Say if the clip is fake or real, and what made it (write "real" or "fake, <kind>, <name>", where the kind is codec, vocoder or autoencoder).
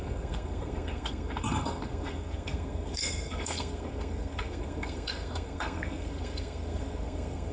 fake, codec, SNAC